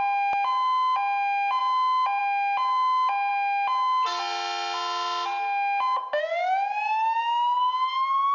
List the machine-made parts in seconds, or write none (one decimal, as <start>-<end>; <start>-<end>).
none